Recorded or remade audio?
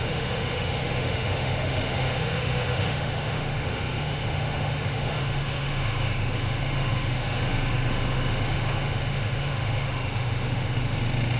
remade